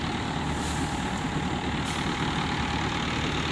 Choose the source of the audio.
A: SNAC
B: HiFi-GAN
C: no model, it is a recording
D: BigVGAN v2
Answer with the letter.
C